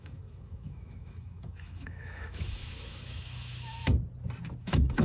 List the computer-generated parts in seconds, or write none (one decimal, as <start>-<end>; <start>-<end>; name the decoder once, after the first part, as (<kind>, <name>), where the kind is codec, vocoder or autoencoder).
0.0-3.9 (autoencoder, DAC-VAE); 4.6-5.0